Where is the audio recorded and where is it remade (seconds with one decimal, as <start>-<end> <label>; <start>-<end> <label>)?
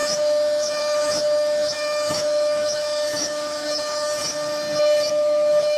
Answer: 0.0-4.2 remade; 4.2-5.1 recorded; 5.1-5.8 remade